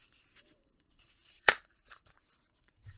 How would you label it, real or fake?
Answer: fake